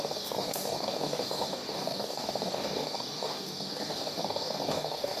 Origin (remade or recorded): remade